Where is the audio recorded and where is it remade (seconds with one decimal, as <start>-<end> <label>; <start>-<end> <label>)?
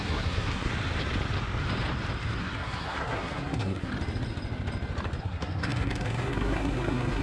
0.0-0.7 remade; 0.7-2.4 recorded; 2.4-3.9 remade; 3.9-5.2 recorded; 5.2-7.2 remade